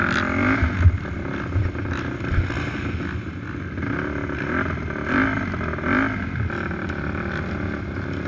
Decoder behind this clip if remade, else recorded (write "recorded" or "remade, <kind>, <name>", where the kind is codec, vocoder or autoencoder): recorded